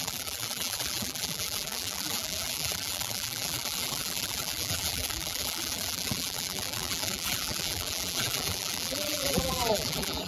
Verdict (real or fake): fake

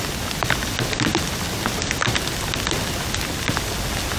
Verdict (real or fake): real